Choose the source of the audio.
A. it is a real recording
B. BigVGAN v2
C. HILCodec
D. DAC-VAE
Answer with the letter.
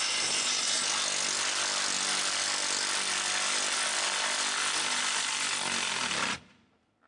A